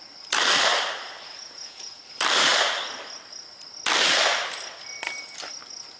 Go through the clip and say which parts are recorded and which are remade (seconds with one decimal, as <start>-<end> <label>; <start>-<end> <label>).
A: 0.0-1.3 recorded; 1.3-2.0 remade; 2.0-6.0 recorded

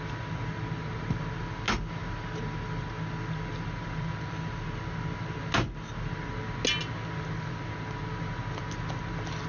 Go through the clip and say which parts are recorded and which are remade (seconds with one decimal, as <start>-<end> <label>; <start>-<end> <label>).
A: 0.0-9.5 recorded

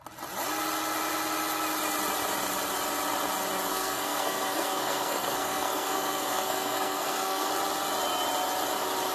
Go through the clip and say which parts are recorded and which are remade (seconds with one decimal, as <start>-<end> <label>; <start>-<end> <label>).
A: 0.0-3.7 recorded; 3.7-7.5 remade; 7.5-9.1 recorded

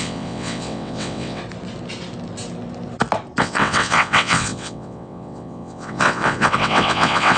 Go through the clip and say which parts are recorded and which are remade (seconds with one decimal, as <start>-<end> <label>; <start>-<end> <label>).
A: 0.0-1.4 remade; 1.4-3.4 recorded; 3.4-7.4 remade